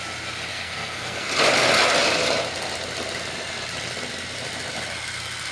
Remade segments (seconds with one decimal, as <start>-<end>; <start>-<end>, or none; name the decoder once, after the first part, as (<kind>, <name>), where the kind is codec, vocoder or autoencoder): 0.5-1.3 (codec, SNAC)